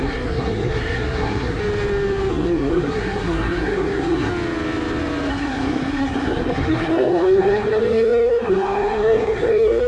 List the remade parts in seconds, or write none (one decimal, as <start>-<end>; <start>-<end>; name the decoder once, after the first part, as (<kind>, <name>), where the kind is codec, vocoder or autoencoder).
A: 0.0-1.6 (codec, SNAC); 2.3-4.3; 5.3-9.9